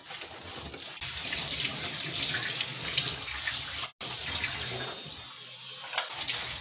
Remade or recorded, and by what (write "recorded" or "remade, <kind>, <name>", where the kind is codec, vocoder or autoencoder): recorded